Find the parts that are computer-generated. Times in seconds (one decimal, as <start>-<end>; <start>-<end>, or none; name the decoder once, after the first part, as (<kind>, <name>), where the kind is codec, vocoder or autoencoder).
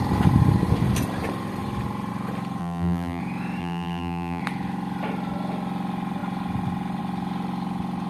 2.6-3.2 (vocoder, BigVGAN v2); 3.6-4.4